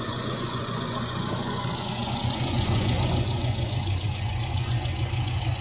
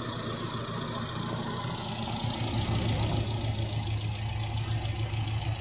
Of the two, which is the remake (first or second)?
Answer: first